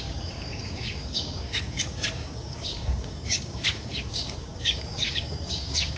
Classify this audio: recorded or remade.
remade